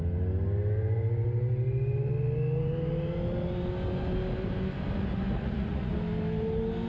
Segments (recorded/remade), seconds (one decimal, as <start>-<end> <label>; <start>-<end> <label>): 0.0-5.4 recorded; 5.4-5.9 remade; 5.9-6.9 recorded